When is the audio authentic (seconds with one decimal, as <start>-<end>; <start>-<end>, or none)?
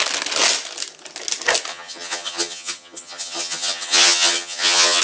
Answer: 0.0-1.7